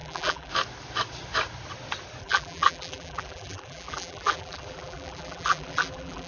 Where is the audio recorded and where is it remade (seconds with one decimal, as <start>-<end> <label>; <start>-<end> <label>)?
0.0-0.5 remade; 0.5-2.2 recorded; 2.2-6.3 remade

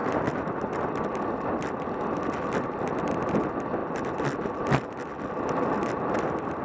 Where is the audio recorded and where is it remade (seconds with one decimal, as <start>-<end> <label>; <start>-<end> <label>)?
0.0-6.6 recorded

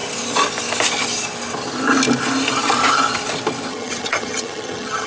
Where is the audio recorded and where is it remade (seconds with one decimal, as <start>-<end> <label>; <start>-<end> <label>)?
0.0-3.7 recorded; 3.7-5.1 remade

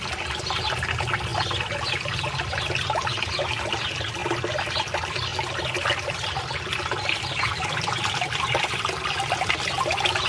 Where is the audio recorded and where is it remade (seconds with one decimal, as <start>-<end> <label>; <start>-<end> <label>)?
0.0-10.3 recorded